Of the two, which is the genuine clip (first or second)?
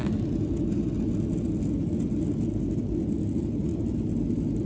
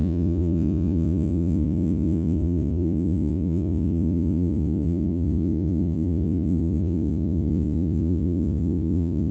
first